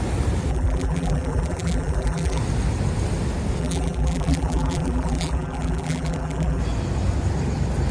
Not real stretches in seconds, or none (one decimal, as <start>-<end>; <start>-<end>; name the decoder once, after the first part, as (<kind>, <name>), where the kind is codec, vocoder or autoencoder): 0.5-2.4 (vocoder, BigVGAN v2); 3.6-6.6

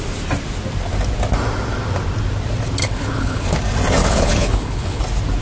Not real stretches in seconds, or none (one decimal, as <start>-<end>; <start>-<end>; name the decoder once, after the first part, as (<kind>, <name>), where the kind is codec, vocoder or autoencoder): 2.8-3.4 (codec, HILCodec); 4.0-5.0

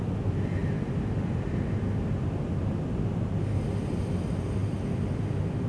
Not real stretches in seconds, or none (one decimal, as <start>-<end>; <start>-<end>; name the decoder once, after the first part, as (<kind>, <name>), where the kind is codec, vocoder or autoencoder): none